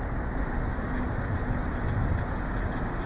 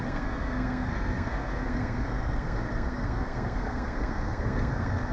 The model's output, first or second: second